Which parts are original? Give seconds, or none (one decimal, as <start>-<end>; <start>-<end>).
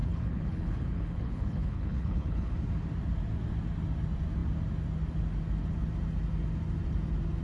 2.5-7.4